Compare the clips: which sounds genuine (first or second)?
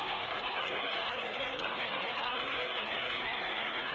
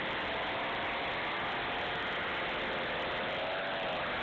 second